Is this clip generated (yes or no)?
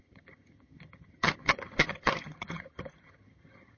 yes